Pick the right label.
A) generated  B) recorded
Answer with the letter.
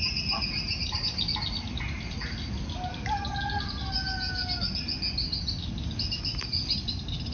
B